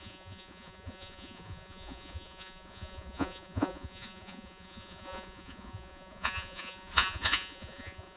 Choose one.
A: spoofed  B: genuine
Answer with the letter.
A